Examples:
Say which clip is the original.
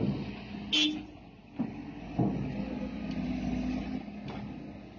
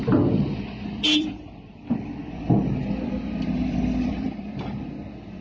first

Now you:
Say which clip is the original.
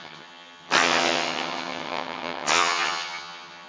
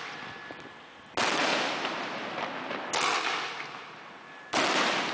second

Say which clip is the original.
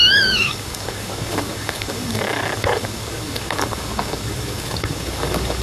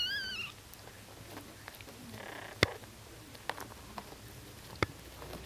second